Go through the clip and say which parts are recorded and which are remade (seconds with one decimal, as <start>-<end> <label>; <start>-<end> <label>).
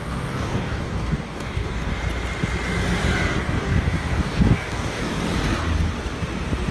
0.0-1.9 remade; 1.9-3.4 recorded; 3.4-5.0 remade; 5.0-6.7 recorded